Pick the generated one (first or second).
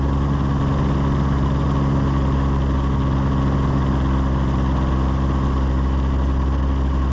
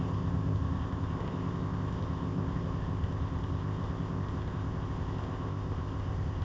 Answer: second